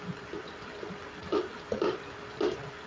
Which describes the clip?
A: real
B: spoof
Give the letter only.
A